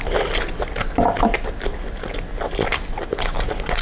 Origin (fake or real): real